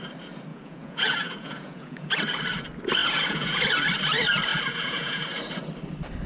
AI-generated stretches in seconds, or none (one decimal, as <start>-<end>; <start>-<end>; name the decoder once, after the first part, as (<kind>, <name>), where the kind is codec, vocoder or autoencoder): 0.5-2.1 (vocoder, Vocos); 3.0-3.7; 4.5-5.2